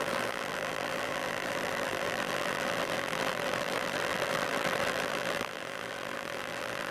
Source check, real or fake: fake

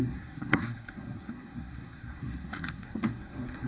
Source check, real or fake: fake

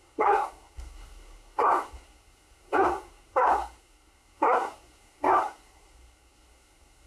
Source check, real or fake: fake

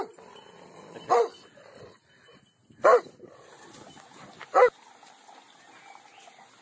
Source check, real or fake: real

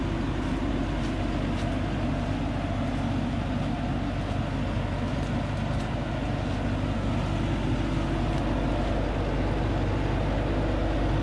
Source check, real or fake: real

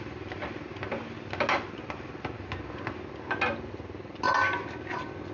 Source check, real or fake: real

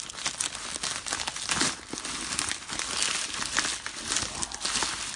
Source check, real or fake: real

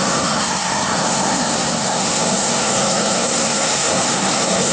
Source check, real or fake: fake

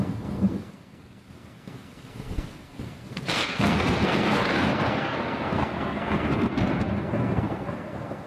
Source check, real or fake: fake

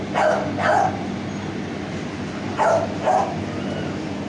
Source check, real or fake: real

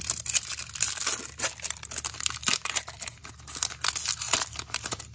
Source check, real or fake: real